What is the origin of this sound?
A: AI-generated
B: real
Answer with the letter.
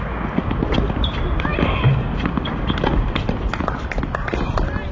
B